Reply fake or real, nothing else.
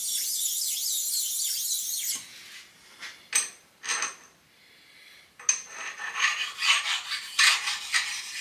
real